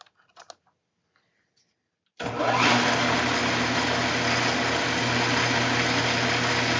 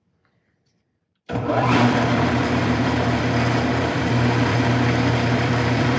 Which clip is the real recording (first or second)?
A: first